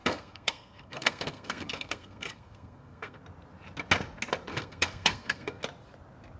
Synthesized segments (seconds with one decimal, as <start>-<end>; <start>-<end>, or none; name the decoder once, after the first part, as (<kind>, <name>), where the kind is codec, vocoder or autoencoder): 0.0-3.2 (codec, SNAC); 4.5-5.6